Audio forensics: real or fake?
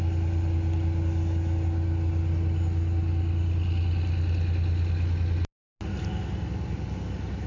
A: real